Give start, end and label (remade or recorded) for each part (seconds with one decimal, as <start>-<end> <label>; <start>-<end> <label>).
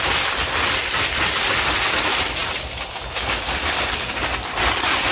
0.0-5.1 recorded